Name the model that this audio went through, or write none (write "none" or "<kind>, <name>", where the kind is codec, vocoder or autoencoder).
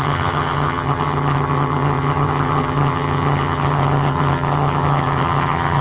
vocoder, HiFi-GAN